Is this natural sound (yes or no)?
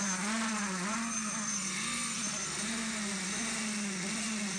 yes